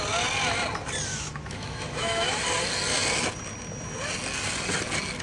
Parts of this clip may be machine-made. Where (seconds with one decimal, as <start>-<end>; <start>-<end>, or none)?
1.1-2.4